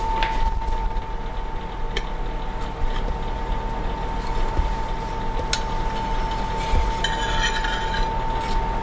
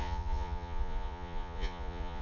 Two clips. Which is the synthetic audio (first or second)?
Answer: second